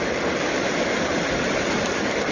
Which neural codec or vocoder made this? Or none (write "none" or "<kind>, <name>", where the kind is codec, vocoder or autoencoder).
none